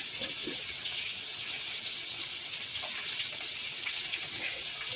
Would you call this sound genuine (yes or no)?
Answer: no